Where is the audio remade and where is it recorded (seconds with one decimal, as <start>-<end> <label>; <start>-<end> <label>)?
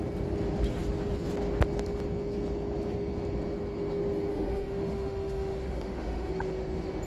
0.0-4.3 recorded; 4.3-6.3 remade; 6.3-7.1 recorded